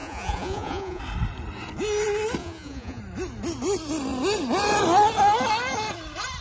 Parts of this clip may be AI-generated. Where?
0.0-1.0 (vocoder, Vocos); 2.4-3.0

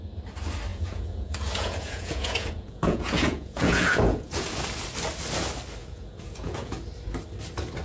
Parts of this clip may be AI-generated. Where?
0.7-4.5 (vocoder, Vocos); 5.8-6.8

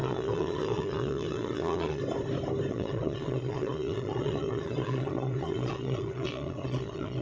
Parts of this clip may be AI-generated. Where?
0.0-2.0 (vocoder, Vocos); 2.7-7.2

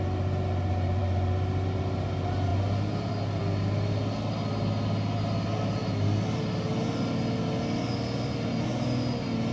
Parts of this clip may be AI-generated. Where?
none

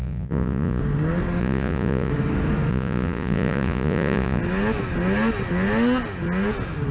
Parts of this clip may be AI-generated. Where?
0.0-0.8 (vocoder, Vocos); 1.4-2.1; 2.7-4.4

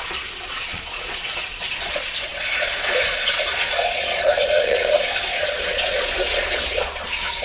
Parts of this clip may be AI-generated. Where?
0.0-7.4 (vocoder, Vocos)